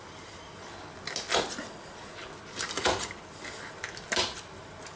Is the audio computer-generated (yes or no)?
no